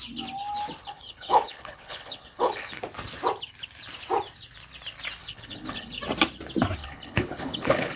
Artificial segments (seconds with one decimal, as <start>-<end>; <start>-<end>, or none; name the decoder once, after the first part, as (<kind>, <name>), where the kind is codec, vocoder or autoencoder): 0.8-2.8 (codec, HILCodec); 5.2-6.0; 6.8-8.0